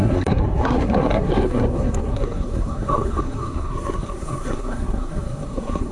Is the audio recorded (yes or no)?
no